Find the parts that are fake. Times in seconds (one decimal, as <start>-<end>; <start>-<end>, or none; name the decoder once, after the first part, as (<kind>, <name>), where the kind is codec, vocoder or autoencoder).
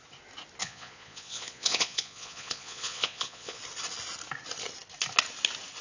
0.6-3.6 (vocoder, Vocos)